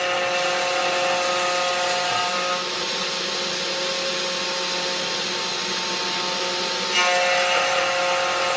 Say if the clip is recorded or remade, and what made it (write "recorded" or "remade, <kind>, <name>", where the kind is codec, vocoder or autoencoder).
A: recorded